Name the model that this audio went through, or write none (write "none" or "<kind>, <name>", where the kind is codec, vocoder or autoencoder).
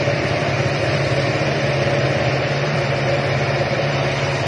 vocoder, BigVGAN v2